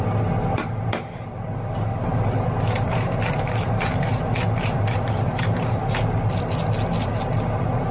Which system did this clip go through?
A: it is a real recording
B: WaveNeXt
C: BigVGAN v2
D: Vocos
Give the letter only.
A